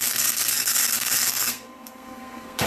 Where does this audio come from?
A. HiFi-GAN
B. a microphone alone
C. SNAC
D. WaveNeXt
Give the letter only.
C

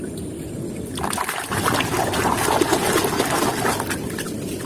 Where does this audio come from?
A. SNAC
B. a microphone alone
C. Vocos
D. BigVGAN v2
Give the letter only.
B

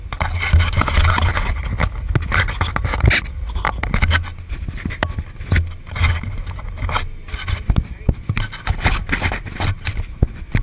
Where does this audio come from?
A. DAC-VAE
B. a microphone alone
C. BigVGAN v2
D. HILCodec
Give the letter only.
B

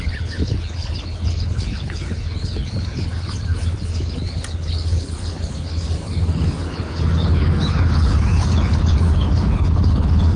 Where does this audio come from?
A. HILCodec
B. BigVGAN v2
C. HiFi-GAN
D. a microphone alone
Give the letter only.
A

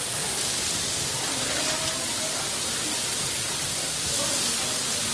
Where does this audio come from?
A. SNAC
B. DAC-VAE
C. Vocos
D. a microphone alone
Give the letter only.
D